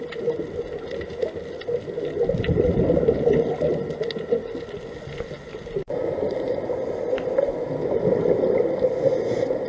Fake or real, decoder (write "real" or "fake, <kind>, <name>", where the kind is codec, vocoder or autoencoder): real